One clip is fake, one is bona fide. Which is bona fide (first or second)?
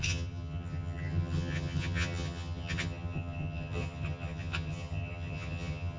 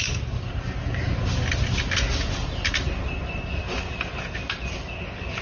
second